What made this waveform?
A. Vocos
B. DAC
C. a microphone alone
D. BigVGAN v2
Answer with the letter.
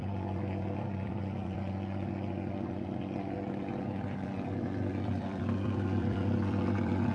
D